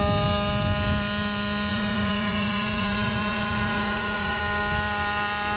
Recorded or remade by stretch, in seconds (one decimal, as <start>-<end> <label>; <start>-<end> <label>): 0.0-1.7 recorded; 1.7-4.4 remade; 4.4-5.6 recorded